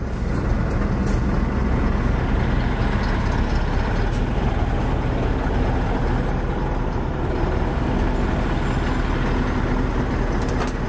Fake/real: real